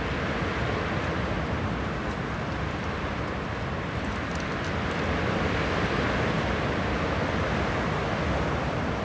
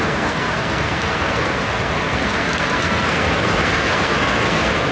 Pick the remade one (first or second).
second